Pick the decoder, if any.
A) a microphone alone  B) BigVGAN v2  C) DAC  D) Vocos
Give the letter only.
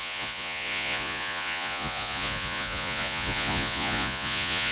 D